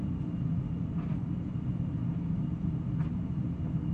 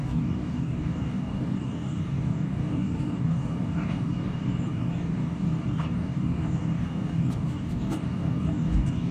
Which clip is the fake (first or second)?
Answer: second